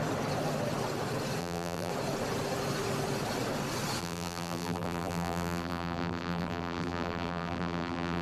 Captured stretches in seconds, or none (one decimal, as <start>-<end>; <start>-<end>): 0.0-1.4; 1.9-4.0